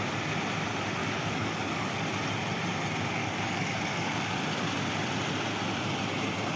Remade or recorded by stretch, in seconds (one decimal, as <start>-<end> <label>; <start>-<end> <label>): 0.0-1.0 recorded; 1.0-2.1 remade; 2.1-3.2 recorded; 3.2-4.3 remade; 4.3-6.6 recorded